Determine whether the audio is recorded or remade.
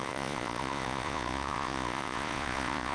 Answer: remade